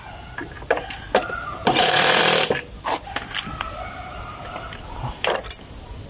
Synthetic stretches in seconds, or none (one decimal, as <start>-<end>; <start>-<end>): 1.6-2.2